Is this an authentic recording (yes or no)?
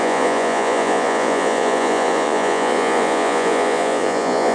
no